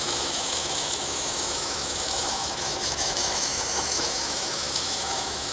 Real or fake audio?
fake